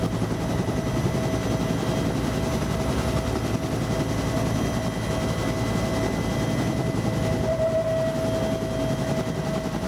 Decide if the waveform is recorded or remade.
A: recorded